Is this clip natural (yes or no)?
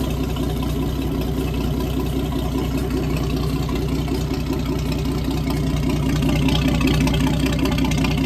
yes